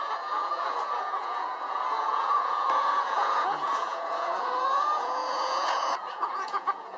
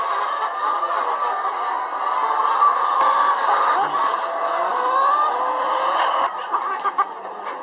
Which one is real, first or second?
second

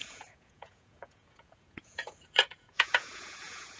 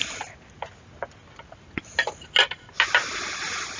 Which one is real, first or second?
second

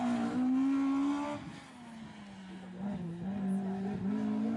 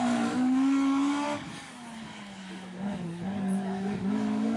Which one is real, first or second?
first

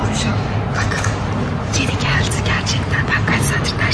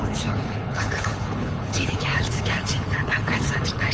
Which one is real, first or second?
first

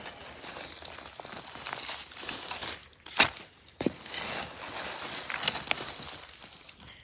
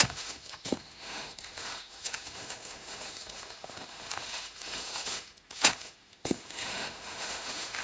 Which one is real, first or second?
first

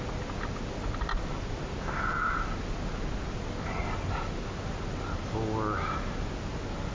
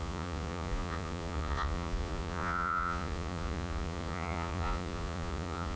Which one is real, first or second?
first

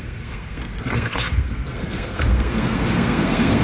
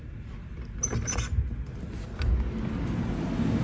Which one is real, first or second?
second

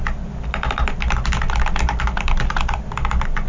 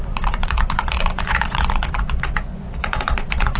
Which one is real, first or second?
first